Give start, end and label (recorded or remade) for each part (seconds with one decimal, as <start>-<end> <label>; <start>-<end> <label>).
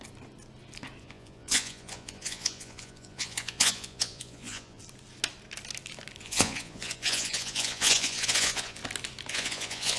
0.0-1.0 recorded; 1.0-4.8 remade; 4.8-6.2 recorded; 6.2-8.8 remade; 8.8-9.3 recorded; 9.3-10.0 remade